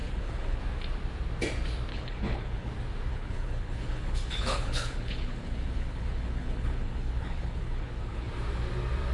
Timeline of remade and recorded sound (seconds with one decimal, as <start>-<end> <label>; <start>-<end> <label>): 0.0-0.6 remade; 0.6-1.9 recorded; 1.9-2.7 remade; 2.7-3.1 recorded; 3.1-8.3 remade; 8.3-9.1 recorded